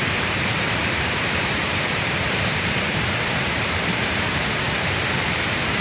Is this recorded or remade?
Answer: remade